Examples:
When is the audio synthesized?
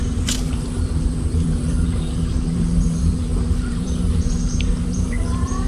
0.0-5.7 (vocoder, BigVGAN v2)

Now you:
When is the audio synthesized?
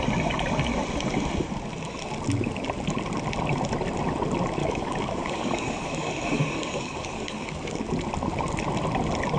4.6-7.9 (codec, DAC)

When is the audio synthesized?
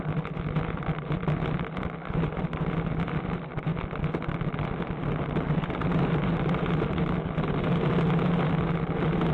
none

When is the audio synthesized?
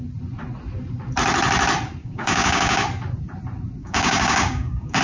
2.0-2.8 (codec, DAC); 3.8-5.0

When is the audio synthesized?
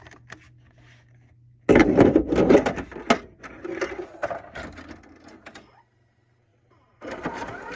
1.8-3.0 (vocoder, BigVGAN v2); 6.5-7.8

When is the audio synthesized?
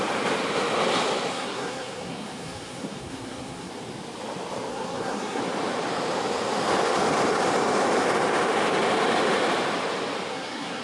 1.3-3.7 (codec, SNAC); 4.7-5.4; 10.3-10.8